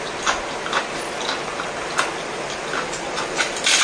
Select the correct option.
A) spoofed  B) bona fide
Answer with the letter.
B